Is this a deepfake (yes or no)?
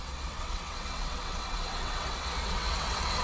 yes